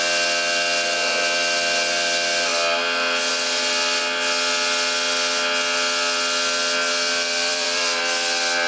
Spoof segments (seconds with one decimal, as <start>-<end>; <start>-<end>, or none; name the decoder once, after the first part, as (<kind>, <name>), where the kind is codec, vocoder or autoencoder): 7.5-8.0 (vocoder, BigVGAN v2)

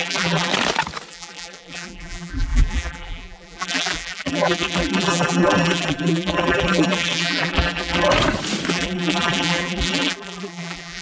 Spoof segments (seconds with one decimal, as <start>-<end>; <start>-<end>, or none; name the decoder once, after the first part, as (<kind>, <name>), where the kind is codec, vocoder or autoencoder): 0.0-0.5 (vocoder, BigVGAN v2); 1.1-8.1; 8.7-11.0

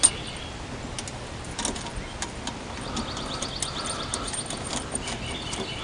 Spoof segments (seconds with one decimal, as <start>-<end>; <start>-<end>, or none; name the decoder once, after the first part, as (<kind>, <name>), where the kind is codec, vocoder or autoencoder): 4.1-5.2 (vocoder, BigVGAN v2)

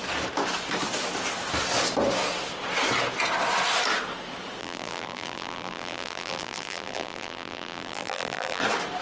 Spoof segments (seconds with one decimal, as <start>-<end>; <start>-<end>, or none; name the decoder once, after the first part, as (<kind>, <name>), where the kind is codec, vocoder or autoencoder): 4.6-8.6 (vocoder, BigVGAN v2)

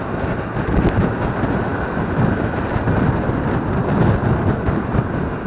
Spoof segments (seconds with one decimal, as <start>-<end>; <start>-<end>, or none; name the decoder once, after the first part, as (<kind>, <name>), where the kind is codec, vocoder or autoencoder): none

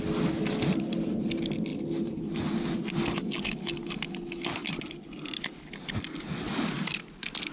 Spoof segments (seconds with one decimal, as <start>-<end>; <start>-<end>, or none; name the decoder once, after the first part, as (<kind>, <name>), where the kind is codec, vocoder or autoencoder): none